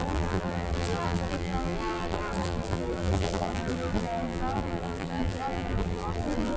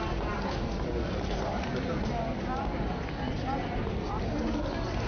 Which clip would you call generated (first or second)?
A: first